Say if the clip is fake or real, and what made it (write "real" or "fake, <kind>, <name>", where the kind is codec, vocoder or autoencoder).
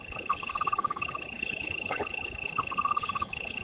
fake, codec, HILCodec